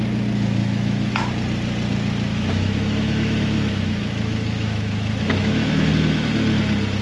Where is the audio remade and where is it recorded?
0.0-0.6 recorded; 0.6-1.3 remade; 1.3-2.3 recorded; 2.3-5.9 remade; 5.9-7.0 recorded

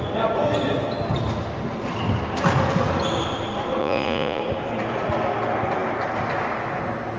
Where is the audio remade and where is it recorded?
0.0-3.8 recorded; 3.8-4.4 remade; 4.4-7.2 recorded

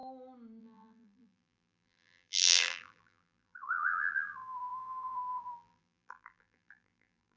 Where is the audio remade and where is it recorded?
0.0-0.6 recorded; 0.6-7.4 remade